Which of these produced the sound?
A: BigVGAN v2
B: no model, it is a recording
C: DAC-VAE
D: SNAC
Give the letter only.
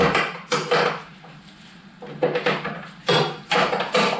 A